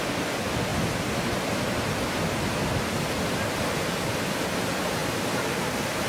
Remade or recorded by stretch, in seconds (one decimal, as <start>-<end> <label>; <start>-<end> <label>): 0.0-6.1 recorded